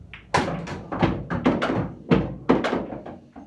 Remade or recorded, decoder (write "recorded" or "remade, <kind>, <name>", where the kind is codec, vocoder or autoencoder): recorded